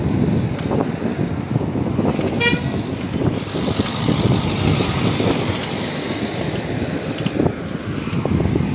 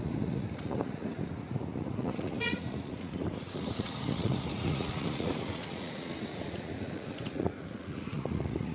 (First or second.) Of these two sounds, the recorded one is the first